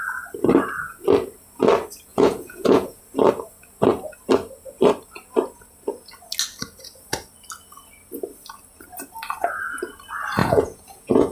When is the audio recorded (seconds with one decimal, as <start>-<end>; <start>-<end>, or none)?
0.0-2.1; 3.0-10.4